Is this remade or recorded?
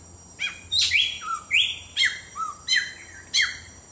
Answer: recorded